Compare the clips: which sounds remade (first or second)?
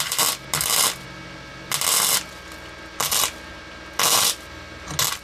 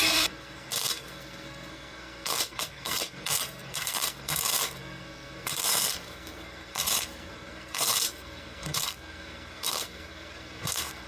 second